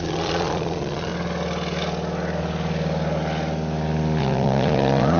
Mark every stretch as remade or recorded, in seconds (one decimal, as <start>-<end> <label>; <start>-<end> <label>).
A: 0.0-1.1 remade; 1.1-4.2 recorded; 4.2-5.2 remade